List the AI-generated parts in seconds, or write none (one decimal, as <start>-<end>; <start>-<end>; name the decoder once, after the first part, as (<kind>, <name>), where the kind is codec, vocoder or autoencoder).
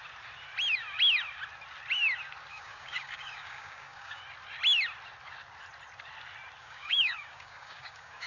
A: 2.5-4.2 (codec, DAC); 6.6-8.3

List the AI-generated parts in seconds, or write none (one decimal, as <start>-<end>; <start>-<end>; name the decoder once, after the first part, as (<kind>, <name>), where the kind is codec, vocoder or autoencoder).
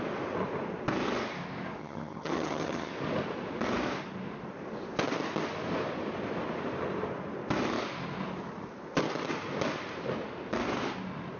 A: 1.8-2.9 (vocoder, HiFi-GAN)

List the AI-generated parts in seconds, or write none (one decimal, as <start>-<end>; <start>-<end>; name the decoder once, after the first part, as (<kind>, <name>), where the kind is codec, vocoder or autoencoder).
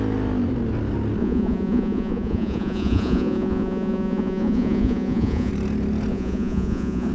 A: 1.2-5.5 (vocoder, Vocos); 6.1-7.1